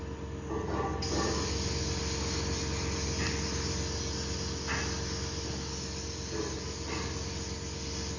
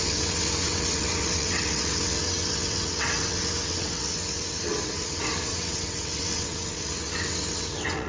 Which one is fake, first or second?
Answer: second